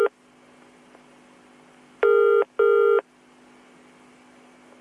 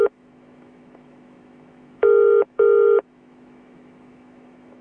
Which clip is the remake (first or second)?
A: second